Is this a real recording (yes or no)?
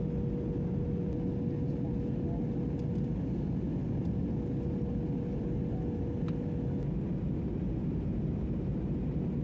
yes